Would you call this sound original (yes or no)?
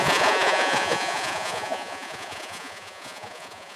no